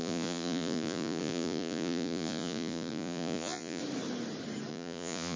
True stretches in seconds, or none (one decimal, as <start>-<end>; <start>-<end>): 3.8-4.7